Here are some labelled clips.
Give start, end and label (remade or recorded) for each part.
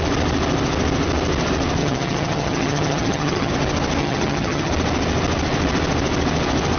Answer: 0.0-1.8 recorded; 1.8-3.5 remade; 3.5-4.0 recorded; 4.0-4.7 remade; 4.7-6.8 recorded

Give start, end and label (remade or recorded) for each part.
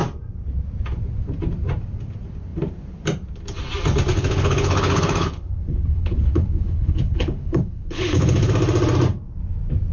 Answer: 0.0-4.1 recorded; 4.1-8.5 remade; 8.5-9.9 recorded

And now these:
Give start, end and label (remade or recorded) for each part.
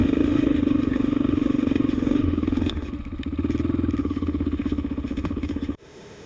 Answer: 0.0-2.9 remade; 2.9-4.0 recorded; 4.0-6.3 remade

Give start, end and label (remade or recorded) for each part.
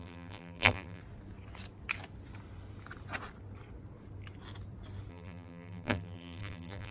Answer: 0.0-1.0 remade; 1.0-5.1 recorded; 5.1-6.9 remade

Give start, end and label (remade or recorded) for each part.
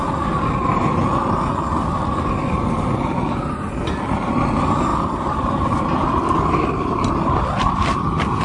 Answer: 0.0-4.9 recorded; 4.9-8.4 remade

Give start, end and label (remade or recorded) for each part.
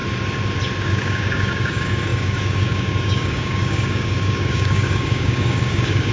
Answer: 0.0-0.8 recorded; 0.8-6.1 remade